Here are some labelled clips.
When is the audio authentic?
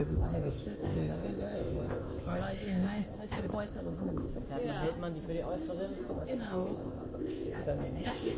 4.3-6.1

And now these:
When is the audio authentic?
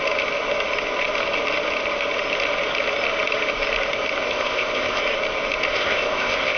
0.0-4.2; 5.0-5.7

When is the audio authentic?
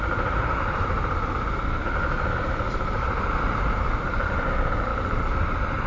0.0-5.9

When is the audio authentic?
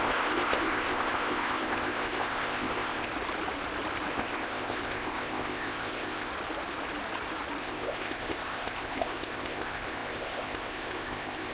3.1-4.1; 6.3-7.6